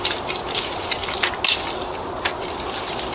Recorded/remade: recorded